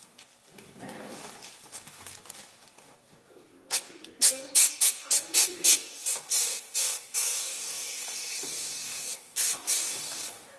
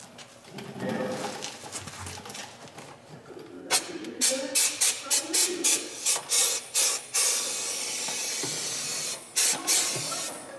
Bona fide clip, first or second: second